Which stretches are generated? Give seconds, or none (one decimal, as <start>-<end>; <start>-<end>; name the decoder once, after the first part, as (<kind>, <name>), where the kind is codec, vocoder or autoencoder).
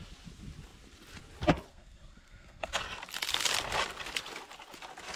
1.7-2.8 (codec, SNAC)